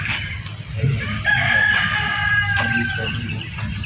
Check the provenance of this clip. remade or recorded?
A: recorded